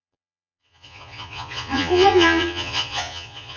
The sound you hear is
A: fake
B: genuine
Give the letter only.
A